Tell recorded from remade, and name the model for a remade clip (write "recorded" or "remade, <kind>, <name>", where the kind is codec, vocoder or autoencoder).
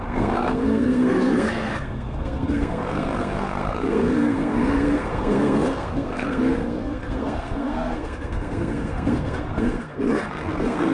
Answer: remade, codec, SNAC